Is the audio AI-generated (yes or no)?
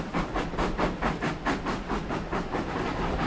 no